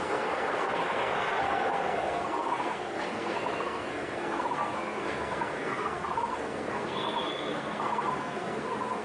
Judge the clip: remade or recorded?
remade